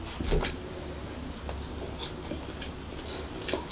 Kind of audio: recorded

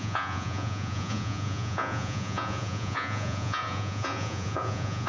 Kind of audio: remade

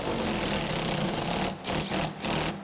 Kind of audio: recorded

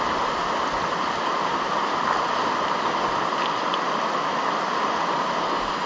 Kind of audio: recorded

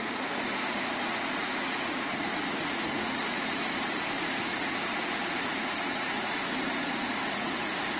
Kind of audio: remade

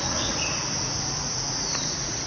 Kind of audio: remade